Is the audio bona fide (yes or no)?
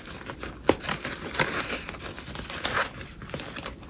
yes